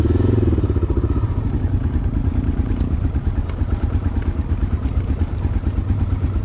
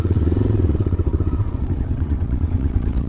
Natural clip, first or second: first